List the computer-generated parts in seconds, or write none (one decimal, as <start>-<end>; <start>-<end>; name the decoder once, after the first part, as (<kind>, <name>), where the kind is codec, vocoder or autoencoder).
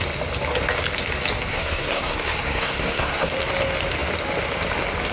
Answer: 1.5-3.3 (codec, SNAC)